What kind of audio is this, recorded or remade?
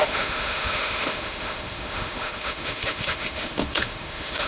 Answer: remade